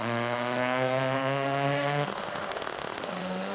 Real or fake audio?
fake